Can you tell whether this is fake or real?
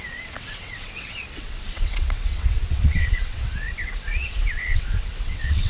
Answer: fake